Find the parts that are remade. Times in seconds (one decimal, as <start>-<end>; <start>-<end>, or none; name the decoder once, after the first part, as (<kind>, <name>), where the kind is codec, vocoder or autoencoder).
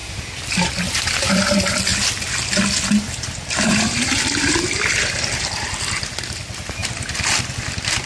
none